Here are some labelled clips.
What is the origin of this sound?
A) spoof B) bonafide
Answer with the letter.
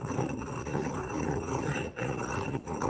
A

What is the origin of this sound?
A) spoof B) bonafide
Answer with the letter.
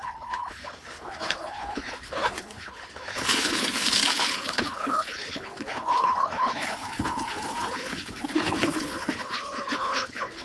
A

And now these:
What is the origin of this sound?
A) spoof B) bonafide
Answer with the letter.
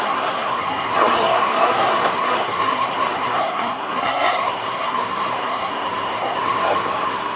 A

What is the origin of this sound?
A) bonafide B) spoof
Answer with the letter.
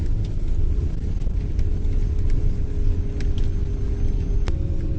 A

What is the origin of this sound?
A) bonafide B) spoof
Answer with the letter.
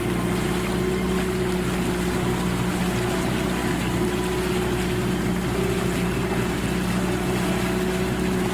A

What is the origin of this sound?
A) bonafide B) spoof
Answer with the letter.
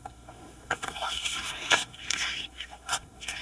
B